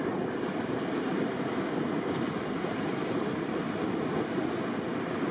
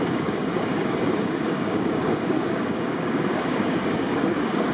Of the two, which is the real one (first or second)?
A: first